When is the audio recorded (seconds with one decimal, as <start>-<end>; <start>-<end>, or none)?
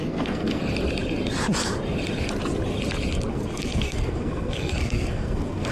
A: 0.6-3.3